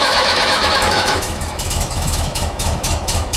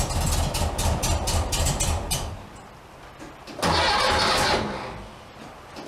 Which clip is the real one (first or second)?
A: second